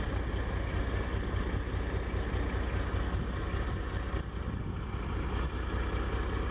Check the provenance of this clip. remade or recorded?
recorded